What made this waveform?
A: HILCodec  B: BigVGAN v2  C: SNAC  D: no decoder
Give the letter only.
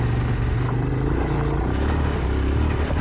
D